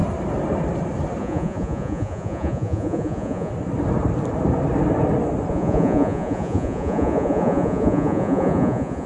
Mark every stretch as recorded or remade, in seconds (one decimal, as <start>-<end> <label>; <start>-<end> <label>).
0.0-1.2 recorded; 1.2-3.5 remade; 3.5-5.5 recorded; 5.5-9.1 remade